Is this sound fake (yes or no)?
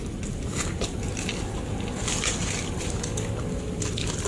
no